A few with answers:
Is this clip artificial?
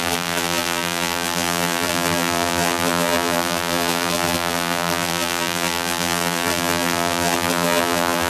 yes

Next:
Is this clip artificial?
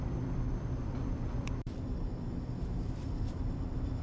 yes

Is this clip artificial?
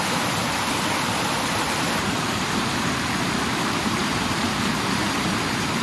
yes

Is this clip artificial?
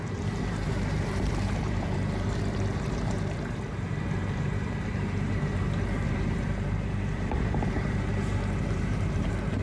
yes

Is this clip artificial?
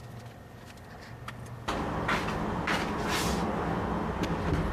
no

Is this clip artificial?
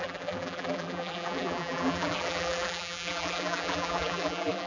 yes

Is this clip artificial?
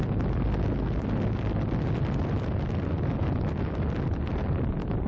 no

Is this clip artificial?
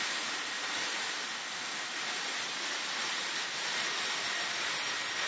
no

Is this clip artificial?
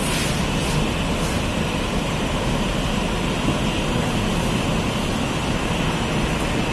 no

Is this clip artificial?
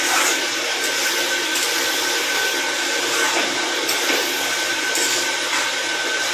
no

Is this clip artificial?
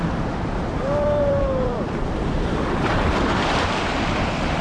yes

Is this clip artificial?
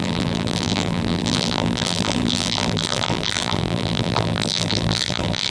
yes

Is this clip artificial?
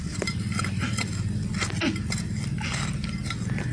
no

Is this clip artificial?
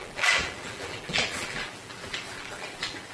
yes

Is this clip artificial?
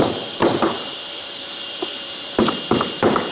yes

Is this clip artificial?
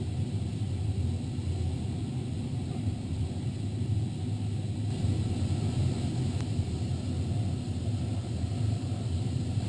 no